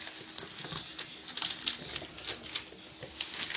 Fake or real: real